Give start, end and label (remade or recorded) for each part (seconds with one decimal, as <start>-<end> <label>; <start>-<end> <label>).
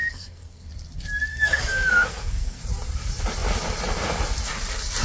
0.0-0.7 remade; 0.7-1.3 recorded; 1.3-2.6 remade; 2.6-5.0 recorded